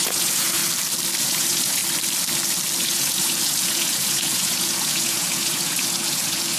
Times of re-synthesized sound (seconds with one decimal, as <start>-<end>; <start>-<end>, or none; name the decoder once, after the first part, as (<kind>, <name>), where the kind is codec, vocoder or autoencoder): 0.0-0.6 (vocoder, Vocos); 1.2-1.8; 2.8-6.6